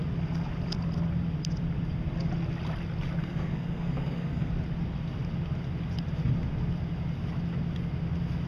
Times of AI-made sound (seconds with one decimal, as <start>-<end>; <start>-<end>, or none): 3.2-4.5